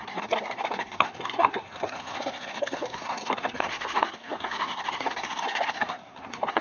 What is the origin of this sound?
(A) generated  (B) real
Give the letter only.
A